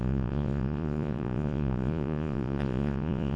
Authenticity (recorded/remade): remade